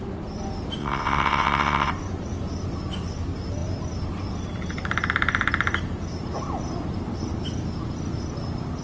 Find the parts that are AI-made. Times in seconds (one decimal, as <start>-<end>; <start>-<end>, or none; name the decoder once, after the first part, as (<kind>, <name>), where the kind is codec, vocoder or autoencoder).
0.8-1.9 (vocoder, WaveNeXt)